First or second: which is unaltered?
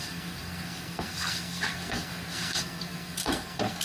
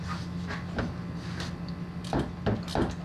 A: second